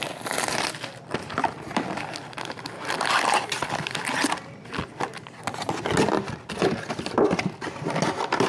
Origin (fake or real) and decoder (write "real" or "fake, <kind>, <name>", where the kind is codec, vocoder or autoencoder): real